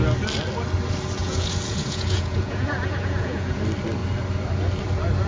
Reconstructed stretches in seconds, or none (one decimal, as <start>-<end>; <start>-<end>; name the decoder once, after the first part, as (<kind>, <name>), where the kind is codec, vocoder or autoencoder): 1.2-3.6 (vocoder, Vocos)